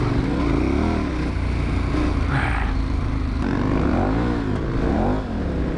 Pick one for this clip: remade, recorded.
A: recorded